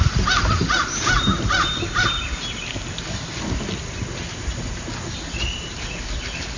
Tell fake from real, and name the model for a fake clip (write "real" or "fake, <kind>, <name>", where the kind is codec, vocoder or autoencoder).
real